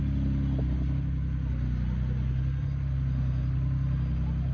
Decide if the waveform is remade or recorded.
recorded